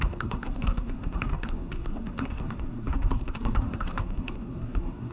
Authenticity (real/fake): fake